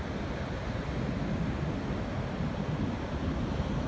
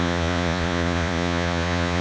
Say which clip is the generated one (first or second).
second